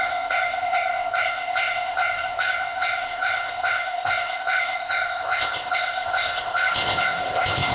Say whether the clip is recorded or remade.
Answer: remade